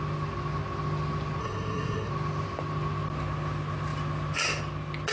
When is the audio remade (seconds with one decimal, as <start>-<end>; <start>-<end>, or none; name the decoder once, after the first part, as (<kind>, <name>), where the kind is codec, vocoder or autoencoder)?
1.4-2.1 (codec, SNAC)